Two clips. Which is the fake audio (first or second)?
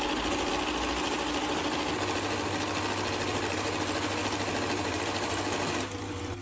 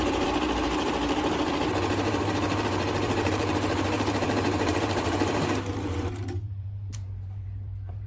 second